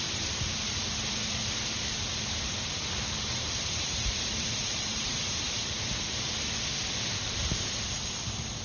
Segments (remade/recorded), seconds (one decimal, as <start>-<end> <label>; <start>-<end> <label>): 0.0-2.1 recorded; 2.1-6.3 remade; 6.3-8.6 recorded